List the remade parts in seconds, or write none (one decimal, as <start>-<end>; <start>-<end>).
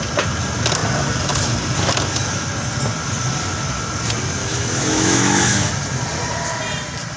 4.4-5.7